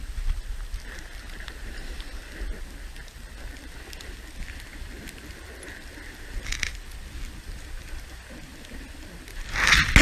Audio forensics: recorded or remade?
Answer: recorded